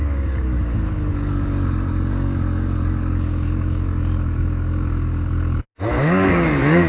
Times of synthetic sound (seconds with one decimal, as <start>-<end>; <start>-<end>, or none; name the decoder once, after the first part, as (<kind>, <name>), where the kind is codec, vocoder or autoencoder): 0.0-6.9 (codec, DAC)